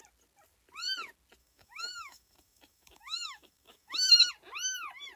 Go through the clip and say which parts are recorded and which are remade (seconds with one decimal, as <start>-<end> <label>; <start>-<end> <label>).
0.0-1.4 recorded; 1.4-4.3 remade; 4.3-5.2 recorded